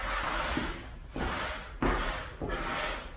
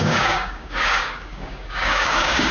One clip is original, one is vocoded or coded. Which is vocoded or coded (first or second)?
second